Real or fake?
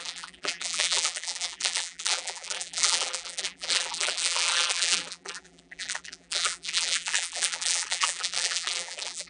fake